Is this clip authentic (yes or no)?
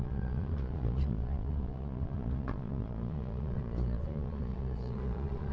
no